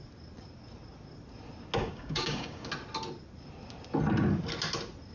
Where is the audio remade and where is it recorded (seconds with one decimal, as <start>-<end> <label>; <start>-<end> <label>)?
0.0-1.8 recorded; 1.8-2.7 remade; 2.7-5.1 recorded